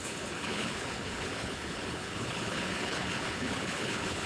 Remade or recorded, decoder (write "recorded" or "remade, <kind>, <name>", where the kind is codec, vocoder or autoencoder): remade, codec, HILCodec